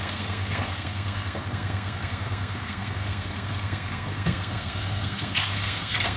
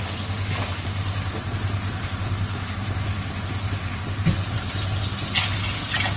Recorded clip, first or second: second